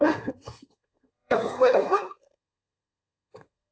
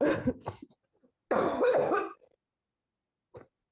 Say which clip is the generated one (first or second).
first